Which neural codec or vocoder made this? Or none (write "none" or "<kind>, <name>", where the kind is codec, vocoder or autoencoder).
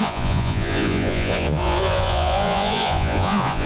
vocoder, Vocos